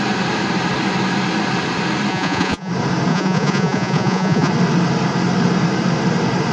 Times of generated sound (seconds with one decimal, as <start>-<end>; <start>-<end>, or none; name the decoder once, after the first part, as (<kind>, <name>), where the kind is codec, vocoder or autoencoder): 2.1-2.7 (vocoder, Vocos); 3.1-4.5